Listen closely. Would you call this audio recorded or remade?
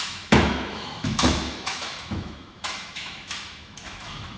remade